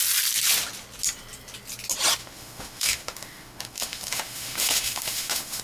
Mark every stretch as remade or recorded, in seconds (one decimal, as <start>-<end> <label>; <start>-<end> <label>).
0.0-2.2 recorded; 2.2-5.6 remade